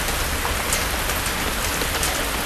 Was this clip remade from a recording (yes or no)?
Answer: no